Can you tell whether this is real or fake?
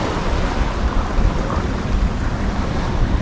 real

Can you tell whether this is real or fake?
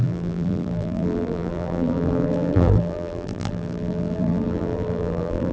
fake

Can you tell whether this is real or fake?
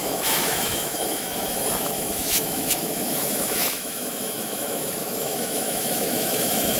fake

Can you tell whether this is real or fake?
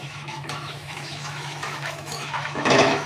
fake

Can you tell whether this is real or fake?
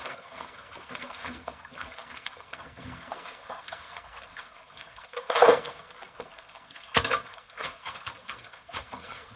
fake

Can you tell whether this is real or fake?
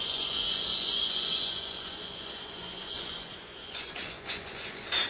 fake